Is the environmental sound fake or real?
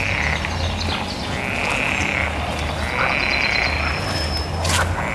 real